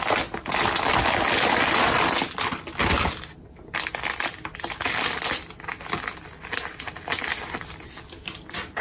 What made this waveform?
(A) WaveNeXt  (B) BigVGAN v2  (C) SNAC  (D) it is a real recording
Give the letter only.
D